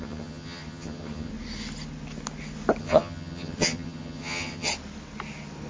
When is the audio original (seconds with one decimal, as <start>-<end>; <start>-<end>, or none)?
1.3-2.8; 4.7-5.7